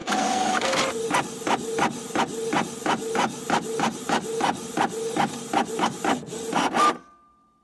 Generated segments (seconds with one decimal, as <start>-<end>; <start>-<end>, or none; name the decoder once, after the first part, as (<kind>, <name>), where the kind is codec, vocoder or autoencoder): 0.0-0.8 (codec, SNAC)